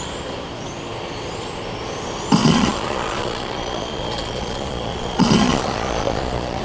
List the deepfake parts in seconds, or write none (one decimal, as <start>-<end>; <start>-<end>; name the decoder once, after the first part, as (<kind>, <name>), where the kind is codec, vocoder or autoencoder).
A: 2.4-6.6 (vocoder, Vocos)